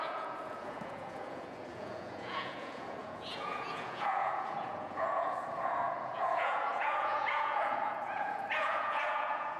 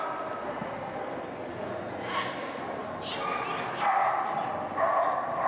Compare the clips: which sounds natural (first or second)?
second